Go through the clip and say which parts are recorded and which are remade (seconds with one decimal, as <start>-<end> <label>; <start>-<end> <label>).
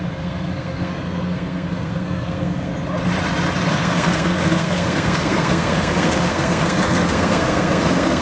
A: 0.0-2.7 remade; 2.7-3.7 recorded; 3.7-8.2 remade